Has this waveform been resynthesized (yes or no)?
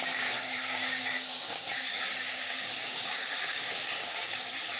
yes